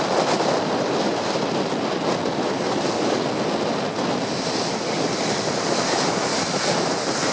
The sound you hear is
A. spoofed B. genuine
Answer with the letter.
B